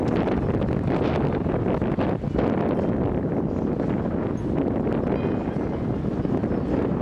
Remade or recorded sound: recorded